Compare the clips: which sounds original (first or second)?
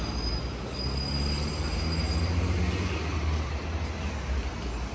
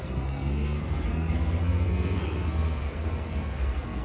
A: first